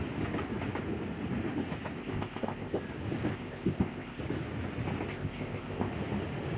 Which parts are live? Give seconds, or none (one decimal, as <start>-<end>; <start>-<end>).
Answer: 0.0-2.0; 2.8-3.3; 4.2-5.1; 5.9-6.6